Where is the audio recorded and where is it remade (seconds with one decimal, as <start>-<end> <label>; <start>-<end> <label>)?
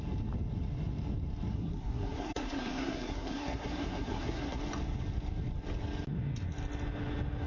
0.0-1.5 recorded; 1.5-4.6 remade; 4.6-7.5 recorded